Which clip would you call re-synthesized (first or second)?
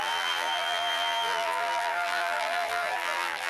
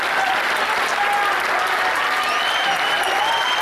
first